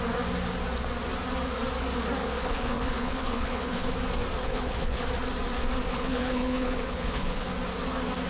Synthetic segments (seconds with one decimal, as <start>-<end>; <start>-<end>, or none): 2.2-3.9; 4.4-5.0; 5.9-7.5